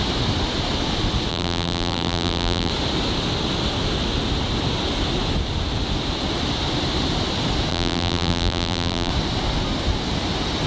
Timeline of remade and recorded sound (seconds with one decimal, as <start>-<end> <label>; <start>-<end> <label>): 0.0-1.3 recorded; 1.3-2.7 remade; 2.7-7.7 recorded; 7.7-9.1 remade; 9.1-10.7 recorded